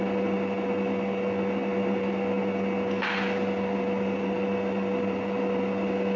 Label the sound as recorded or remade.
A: recorded